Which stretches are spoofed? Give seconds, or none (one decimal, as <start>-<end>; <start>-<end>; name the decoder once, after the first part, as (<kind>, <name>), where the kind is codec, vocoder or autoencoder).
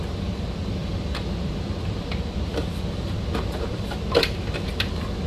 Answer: 0.8-4.0 (vocoder, BigVGAN v2)